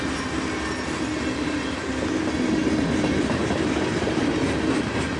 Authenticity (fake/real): real